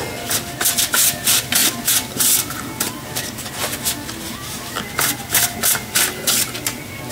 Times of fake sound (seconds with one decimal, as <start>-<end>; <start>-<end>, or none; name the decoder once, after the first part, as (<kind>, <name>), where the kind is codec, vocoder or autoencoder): none